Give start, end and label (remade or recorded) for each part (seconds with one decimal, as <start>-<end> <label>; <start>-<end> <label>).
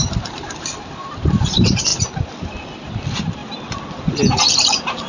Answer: 0.0-1.9 remade; 1.9-2.4 recorded; 2.4-3.4 remade; 3.4-4.2 recorded; 4.2-5.1 remade